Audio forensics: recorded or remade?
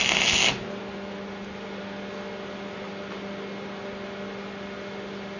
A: recorded